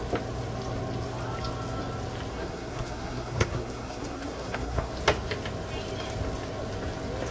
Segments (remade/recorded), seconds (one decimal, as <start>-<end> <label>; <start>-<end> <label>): 0.0-2.3 recorded; 2.3-4.9 remade; 4.9-7.3 recorded